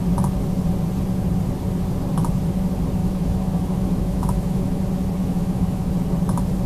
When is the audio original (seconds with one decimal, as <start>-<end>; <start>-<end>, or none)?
0.0-3.0; 4.8-5.2; 5.9-6.7